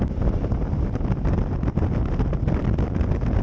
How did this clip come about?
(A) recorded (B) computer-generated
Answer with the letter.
A